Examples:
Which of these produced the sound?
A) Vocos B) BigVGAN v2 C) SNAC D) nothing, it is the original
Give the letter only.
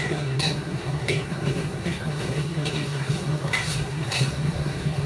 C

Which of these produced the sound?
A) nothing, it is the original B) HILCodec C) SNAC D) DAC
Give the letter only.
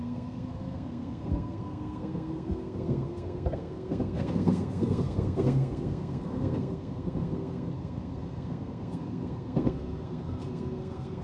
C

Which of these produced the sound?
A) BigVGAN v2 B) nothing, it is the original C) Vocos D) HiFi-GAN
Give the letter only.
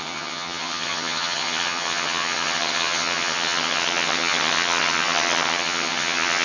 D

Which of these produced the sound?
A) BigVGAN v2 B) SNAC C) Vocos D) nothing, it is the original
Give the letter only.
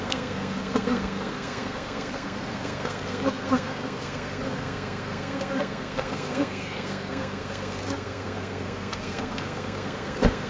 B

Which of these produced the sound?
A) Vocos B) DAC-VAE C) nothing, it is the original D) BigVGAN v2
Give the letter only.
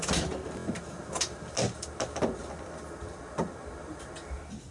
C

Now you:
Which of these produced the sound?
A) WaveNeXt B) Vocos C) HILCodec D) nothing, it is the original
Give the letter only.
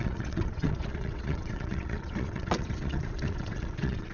A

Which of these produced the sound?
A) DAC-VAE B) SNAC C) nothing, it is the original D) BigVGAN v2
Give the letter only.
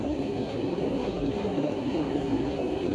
B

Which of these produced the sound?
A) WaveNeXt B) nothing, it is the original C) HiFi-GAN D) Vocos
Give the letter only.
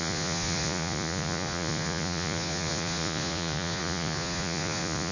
D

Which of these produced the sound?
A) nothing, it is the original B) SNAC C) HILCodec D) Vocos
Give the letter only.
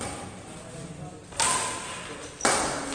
A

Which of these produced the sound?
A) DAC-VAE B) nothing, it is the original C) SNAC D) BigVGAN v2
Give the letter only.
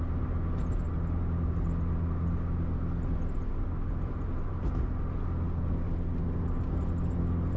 B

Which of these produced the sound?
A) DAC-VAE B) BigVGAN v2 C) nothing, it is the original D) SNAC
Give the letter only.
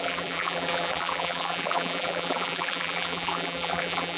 B